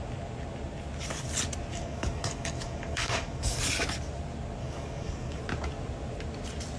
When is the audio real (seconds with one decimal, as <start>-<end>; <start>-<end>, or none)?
0.0-1.7; 3.6-4.6; 5.4-6.8